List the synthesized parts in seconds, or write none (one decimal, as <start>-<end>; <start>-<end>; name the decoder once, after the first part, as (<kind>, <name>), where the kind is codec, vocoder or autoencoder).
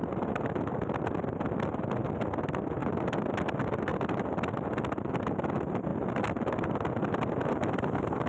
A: none